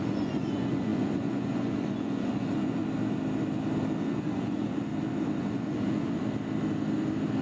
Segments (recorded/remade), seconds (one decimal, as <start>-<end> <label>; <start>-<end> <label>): 0.0-2.8 remade; 2.8-4.0 recorded; 4.0-4.9 remade; 4.9-5.4 recorded; 5.4-6.2 remade; 6.2-7.4 recorded